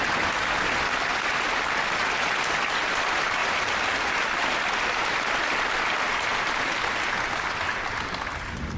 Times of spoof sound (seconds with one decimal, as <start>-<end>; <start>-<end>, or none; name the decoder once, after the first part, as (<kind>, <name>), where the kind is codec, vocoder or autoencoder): 3.4-4.1 (vocoder, BigVGAN v2); 6.3-6.9